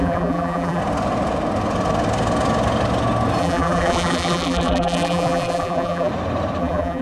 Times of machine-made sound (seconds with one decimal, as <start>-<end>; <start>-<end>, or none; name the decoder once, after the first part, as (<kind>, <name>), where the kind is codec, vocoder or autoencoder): 0.0-0.8 (vocoder, BigVGAN v2); 3.4-6.1; 6.6-7.0